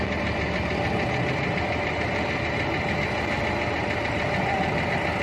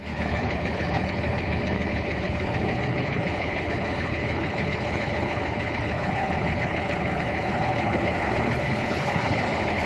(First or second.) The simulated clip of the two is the second